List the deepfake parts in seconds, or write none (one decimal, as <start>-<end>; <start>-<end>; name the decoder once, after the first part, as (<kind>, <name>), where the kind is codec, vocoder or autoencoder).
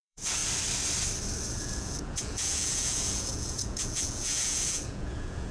0.0-0.4 (vocoder, Vocos); 1.6-5.5